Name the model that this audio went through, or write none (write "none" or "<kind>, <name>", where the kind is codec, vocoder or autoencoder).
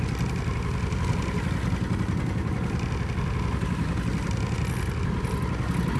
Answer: none